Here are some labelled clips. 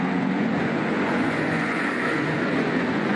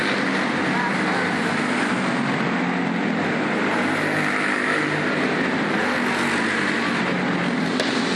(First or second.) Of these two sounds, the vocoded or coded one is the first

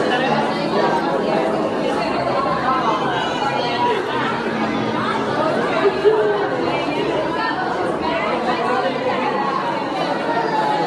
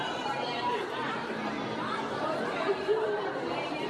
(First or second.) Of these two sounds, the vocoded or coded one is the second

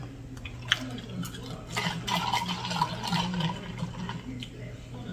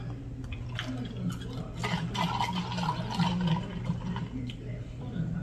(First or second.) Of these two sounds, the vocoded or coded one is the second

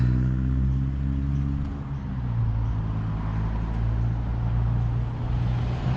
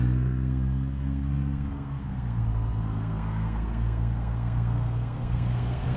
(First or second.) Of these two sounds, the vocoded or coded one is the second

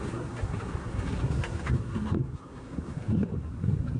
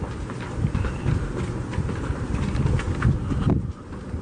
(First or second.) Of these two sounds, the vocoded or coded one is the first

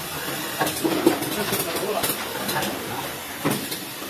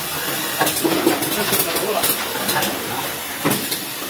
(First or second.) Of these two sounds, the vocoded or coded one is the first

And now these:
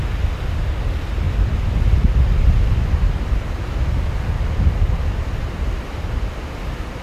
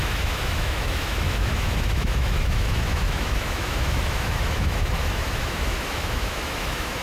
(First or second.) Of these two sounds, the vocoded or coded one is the second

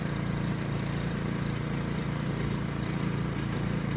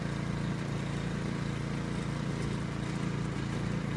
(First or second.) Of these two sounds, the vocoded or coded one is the first